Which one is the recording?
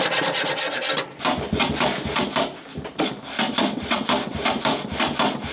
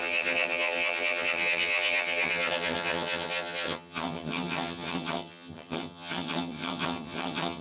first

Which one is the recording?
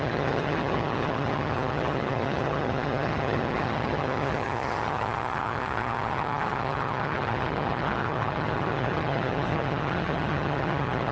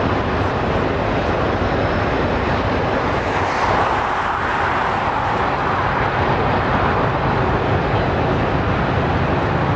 second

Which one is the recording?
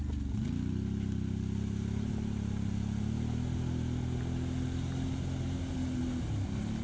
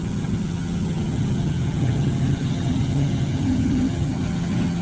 first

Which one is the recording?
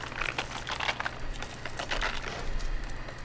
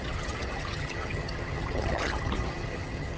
first